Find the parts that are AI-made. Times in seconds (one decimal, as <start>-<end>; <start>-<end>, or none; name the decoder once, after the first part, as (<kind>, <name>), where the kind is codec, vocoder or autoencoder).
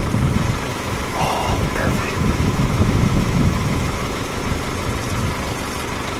0.7-4.4 (autoencoder, DAC-VAE)